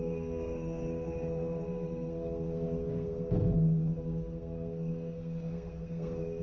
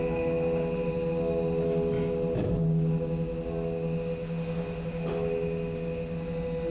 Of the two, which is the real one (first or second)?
second